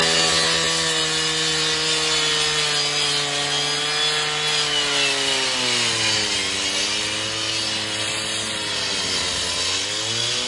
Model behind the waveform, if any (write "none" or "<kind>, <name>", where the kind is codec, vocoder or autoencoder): none